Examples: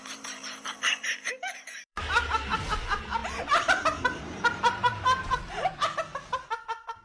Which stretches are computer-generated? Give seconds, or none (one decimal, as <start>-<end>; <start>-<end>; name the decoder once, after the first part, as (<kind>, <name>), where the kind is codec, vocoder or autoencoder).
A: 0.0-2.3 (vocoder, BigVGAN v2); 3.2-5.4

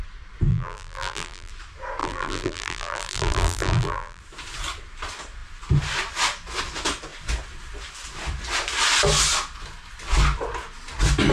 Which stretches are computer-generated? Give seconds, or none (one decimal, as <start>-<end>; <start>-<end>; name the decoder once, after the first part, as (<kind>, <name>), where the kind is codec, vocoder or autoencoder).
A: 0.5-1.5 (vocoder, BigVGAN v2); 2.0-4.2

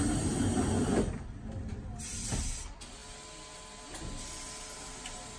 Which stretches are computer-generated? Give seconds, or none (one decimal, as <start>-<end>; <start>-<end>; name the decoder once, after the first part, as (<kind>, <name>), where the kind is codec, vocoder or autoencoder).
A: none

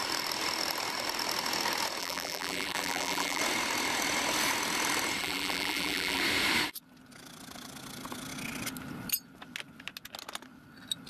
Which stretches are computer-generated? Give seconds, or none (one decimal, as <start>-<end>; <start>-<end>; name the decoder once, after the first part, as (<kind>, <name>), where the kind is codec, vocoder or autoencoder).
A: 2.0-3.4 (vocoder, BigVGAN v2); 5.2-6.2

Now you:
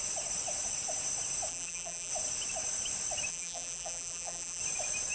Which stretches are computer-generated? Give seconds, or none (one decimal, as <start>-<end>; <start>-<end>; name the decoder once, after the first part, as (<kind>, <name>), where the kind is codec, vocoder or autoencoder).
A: 1.5-2.1 (vocoder, BigVGAN v2); 3.3-4.6

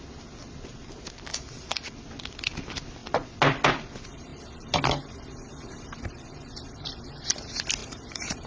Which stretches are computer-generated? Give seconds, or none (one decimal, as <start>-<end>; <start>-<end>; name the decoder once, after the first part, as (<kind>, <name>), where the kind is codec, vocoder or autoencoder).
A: 1.3-1.9 (vocoder, BigVGAN v2); 7.8-8.5

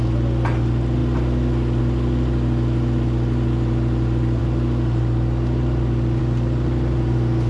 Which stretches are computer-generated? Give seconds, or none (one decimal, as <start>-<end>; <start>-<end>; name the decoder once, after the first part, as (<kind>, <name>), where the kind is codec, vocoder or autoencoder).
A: 0.0-1.0 (vocoder, BigVGAN v2); 1.8-7.5